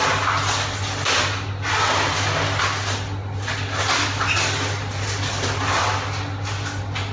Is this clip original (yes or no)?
yes